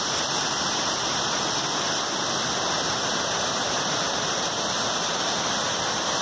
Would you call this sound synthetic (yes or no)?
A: no